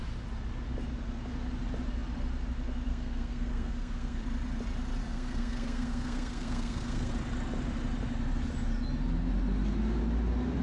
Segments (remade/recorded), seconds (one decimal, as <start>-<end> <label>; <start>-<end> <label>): 0.0-2.9 recorded; 2.9-4.2 remade; 4.2-5.0 recorded; 5.0-7.1 remade; 7.1-10.6 recorded

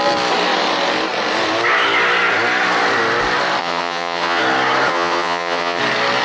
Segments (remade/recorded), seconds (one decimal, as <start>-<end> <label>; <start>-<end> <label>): 0.0-3.6 recorded; 3.6-4.4 remade; 4.4-4.9 recorded; 4.9-5.8 remade; 5.8-6.2 recorded

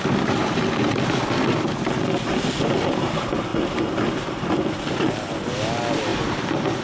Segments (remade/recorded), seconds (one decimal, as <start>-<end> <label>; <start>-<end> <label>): 0.0-3.5 recorded; 3.5-4.1 remade; 4.1-6.1 recorded; 6.1-6.8 remade

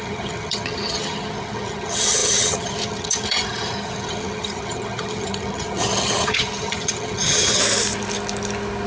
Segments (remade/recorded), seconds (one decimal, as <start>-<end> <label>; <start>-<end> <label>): 0.0-7.6 remade; 7.6-8.9 recorded

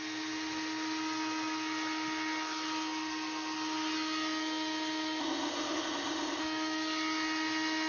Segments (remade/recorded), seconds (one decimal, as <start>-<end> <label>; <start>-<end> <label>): 0.0-5.2 recorded; 5.2-6.4 remade; 6.4-7.9 recorded

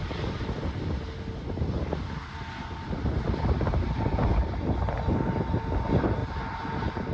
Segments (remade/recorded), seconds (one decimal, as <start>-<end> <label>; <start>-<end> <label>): 0.0-7.1 recorded

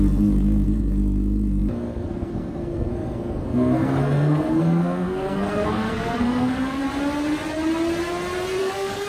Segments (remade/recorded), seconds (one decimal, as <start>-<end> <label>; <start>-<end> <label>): 0.0-6.8 remade; 6.8-8.6 recorded; 8.6-9.1 remade

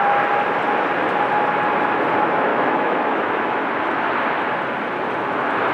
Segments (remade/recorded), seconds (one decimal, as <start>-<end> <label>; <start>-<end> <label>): 0.0-2.5 recorded; 2.5-3.6 remade; 3.6-5.7 recorded